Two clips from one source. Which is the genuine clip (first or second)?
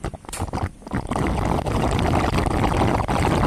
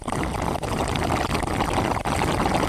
second